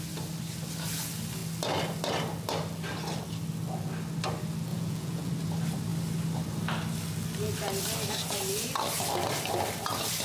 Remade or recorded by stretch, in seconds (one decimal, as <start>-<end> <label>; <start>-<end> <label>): 0.0-4.7 recorded; 4.7-5.3 remade; 5.3-10.2 recorded